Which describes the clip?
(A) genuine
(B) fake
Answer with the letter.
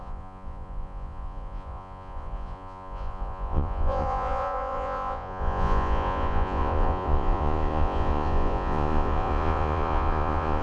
B